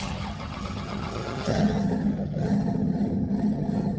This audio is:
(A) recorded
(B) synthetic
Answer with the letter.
B